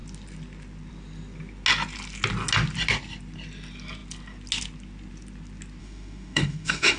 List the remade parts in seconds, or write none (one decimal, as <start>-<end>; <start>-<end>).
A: 5.8-7.0